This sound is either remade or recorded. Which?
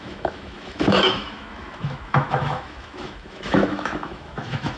remade